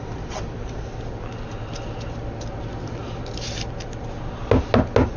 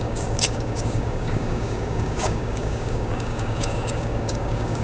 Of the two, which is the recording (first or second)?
first